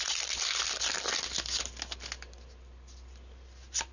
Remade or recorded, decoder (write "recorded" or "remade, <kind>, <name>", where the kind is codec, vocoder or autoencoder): recorded